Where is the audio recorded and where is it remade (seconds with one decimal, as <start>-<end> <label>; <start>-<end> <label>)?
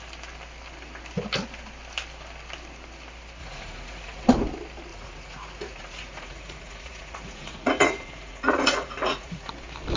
0.0-3.4 recorded; 3.4-4.3 remade; 4.3-4.9 recorded; 4.9-9.5 remade; 9.5-10.0 recorded